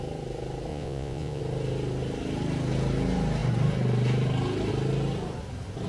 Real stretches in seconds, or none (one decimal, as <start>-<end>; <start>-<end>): 0.0-0.7; 1.4-5.9

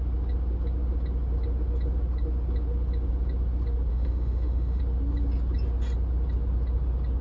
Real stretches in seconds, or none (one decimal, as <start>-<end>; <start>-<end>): 0.0-3.9; 4.8-7.2

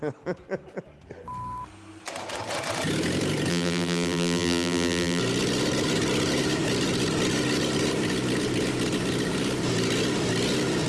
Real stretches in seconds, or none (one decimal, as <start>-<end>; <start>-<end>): 0.0-3.5; 5.2-10.9